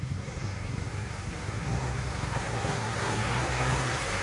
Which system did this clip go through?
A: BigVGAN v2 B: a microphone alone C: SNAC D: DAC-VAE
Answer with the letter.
C